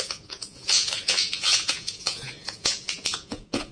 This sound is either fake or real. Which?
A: fake